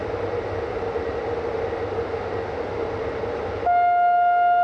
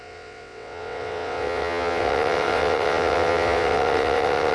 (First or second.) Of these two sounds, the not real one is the second